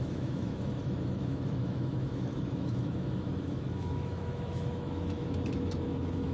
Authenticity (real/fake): fake